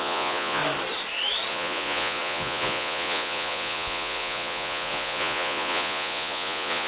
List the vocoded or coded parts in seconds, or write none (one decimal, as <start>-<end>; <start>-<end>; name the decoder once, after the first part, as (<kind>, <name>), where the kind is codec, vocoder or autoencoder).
0.0-0.6 (vocoder, Vocos); 1.5-6.9